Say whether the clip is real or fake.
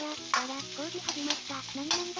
real